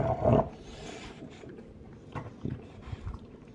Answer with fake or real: fake